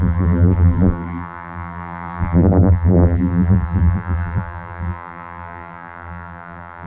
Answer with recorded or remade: remade